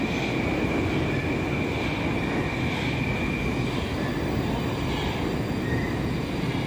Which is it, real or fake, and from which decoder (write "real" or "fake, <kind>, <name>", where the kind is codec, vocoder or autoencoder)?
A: real